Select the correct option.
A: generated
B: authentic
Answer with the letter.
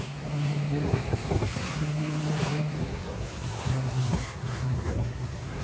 A